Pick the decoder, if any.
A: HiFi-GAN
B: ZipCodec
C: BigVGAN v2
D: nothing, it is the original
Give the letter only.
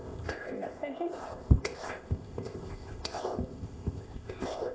B